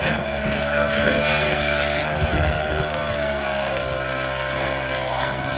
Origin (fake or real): fake